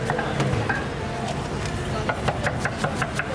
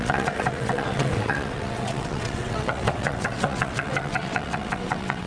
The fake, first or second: second